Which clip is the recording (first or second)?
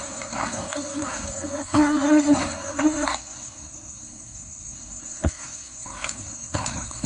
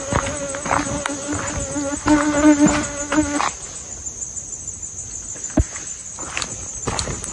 second